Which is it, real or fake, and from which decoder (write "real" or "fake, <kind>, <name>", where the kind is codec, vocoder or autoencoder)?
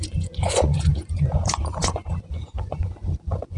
fake, vocoder, Vocos